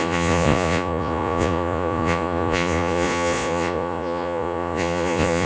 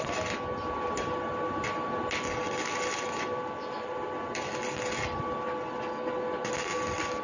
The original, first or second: second